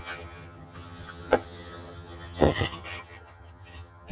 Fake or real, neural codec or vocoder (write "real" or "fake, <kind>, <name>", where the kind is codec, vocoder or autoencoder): fake, vocoder, HiFi-GAN